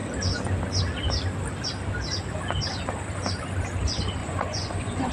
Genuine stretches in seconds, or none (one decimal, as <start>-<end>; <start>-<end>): 0.0-4.2